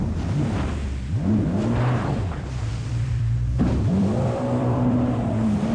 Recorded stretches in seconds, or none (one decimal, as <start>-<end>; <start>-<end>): 0.0-2.7; 5.3-5.7